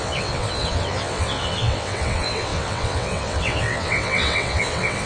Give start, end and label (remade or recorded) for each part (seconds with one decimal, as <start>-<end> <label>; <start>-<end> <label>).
0.0-5.1 remade